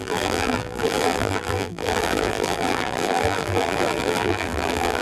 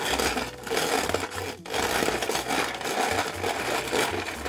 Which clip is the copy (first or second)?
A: first